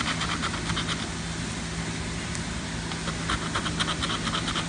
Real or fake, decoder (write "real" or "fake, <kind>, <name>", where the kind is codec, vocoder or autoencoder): real